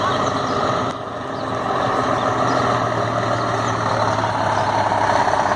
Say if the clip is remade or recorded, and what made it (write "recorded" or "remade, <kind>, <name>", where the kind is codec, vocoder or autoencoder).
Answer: recorded